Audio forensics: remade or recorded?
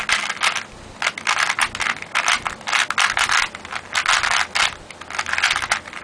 recorded